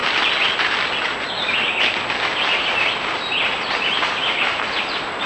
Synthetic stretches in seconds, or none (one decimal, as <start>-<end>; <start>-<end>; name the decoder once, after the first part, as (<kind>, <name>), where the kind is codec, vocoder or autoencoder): 2.5-5.3 (vocoder, BigVGAN v2)